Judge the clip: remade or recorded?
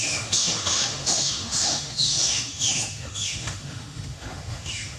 remade